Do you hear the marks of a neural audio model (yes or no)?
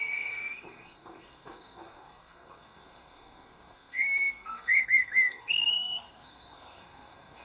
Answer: yes